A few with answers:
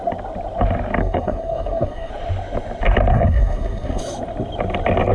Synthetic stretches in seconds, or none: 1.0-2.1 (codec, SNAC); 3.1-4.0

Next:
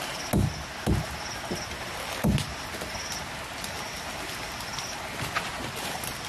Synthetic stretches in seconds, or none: none

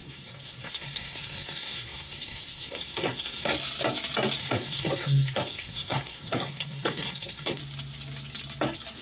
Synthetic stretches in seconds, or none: 0.0-3.5 (codec, SNAC); 4.4-7.6

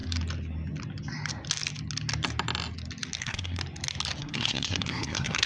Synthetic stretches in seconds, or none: 3.2-3.6 (codec, SNAC); 4.2-5.5

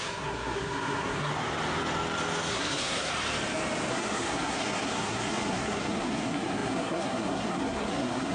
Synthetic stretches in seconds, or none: 0.0-1.3 (codec, SNAC); 2.5-3.1; 3.9-8.3

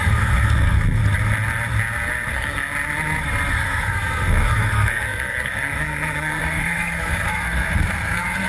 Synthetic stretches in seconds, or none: 0.0-1.0 (codec, SNAC); 2.3-2.7; 3.5-8.5

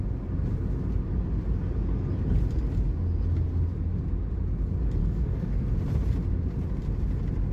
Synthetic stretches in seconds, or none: 5.0-5.7 (codec, SNAC)